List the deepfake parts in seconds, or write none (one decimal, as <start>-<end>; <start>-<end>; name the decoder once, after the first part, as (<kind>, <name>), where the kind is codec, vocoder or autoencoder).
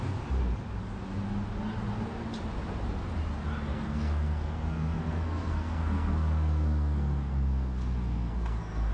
3.7-8.9 (codec, SNAC)